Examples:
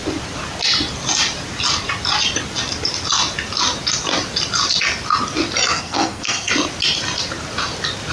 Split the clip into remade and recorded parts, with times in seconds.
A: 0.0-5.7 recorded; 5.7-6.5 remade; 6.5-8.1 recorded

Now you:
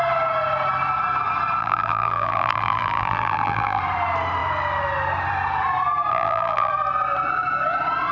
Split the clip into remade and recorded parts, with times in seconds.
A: 0.0-1.6 recorded; 1.6-3.8 remade; 3.8-6.1 recorded; 6.1-6.7 remade; 6.7-8.1 recorded

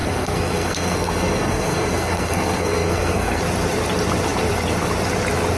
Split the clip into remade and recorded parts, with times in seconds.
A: 0.0-3.4 remade; 3.4-5.6 recorded

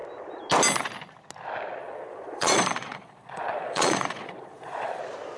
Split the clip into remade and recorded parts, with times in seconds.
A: 0.0-1.8 recorded; 1.8-5.0 remade; 5.0-5.4 recorded

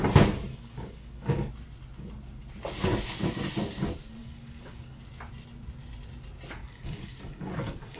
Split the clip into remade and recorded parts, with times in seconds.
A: 0.0-0.5 recorded; 0.5-1.5 remade; 1.5-4.2 recorded; 4.2-5.0 remade; 5.0-6.6 recorded; 6.6-8.0 remade

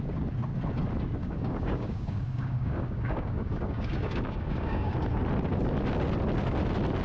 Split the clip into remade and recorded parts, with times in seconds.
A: 0.0-1.2 recorded; 1.2-4.9 remade; 4.9-7.0 recorded